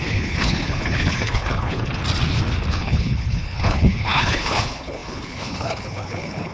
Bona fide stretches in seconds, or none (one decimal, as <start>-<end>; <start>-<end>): 2.0-2.7